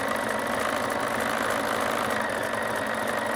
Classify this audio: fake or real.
real